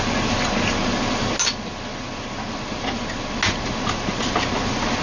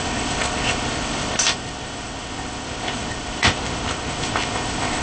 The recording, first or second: first